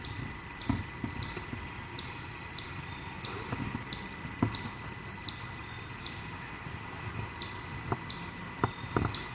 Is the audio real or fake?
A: real